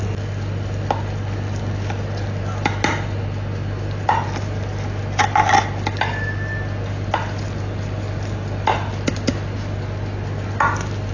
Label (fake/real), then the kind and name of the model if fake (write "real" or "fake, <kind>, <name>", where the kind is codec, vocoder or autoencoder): real